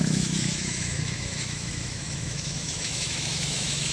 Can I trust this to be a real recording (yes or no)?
no